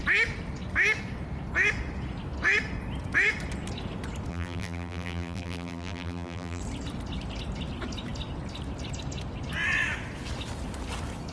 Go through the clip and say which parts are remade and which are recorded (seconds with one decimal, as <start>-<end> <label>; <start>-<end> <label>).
0.0-4.3 recorded; 4.3-6.6 remade; 6.6-11.3 recorded